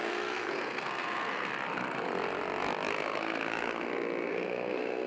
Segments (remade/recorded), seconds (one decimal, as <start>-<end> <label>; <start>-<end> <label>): 0.0-1.5 remade; 1.5-2.9 recorded; 2.9-3.9 remade; 3.9-4.3 recorded; 4.3-5.1 remade